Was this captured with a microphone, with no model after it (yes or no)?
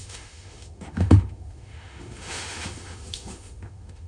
no